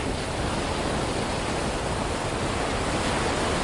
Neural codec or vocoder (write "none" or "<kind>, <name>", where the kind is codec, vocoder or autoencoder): none